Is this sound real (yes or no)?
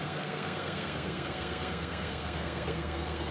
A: no